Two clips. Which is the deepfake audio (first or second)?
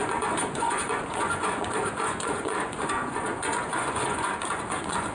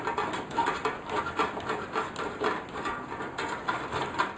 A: first